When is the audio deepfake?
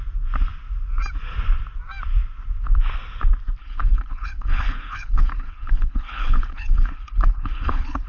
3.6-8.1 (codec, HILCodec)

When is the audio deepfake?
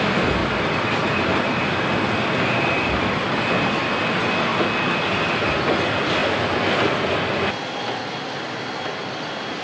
0.4-3.7 (vocoder, BigVGAN v2)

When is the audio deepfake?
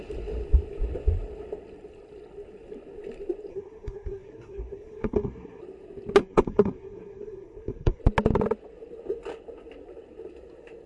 3.5-5.6 (codec, SNAC); 6.2-8.0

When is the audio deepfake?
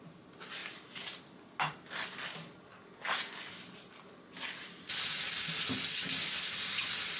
none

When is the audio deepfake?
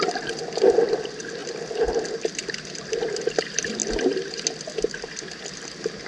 none